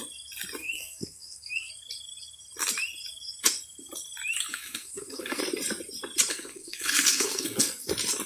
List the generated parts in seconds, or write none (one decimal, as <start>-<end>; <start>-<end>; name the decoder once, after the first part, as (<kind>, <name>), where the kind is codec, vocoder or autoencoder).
0.6-1.7 (codec, SNAC); 4.5-5.4; 6.3-7.9